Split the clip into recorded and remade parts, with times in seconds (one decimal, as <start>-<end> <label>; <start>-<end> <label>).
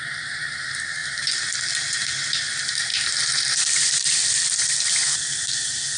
0.0-2.9 recorded; 2.9-4.1 remade; 4.1-6.0 recorded